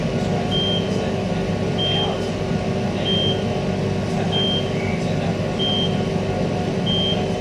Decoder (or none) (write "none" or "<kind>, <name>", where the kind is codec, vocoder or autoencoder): none